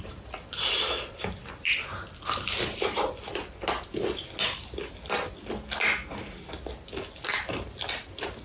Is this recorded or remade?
recorded